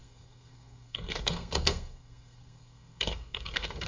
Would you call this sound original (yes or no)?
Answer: no